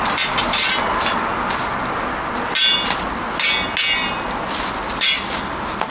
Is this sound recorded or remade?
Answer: recorded